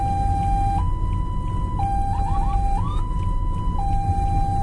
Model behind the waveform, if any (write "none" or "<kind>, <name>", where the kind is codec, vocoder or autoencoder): none